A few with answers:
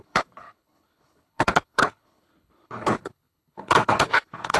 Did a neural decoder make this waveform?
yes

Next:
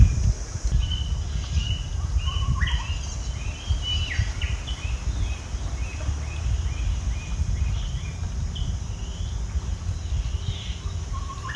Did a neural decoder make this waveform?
no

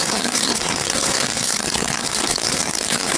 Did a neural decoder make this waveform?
yes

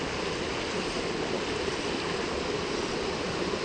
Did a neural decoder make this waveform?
yes